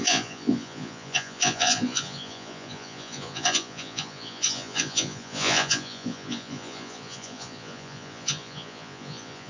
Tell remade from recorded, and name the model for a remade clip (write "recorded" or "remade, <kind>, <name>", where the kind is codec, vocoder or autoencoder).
remade, vocoder, Vocos